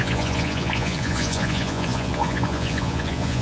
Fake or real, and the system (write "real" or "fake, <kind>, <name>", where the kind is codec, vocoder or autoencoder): fake, vocoder, Vocos